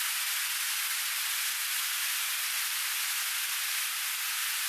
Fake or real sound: real